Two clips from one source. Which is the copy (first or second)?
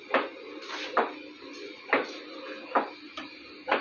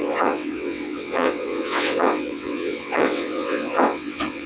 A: second